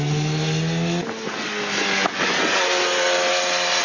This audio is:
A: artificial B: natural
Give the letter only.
B